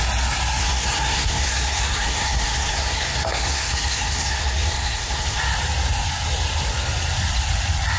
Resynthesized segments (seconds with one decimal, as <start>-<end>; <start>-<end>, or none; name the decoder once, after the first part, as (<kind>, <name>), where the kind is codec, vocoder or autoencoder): 0.6-5.4 (codec, SNAC)